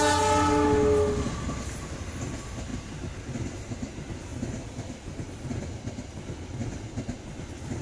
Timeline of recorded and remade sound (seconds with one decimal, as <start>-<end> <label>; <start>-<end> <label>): 0.0-7.8 recorded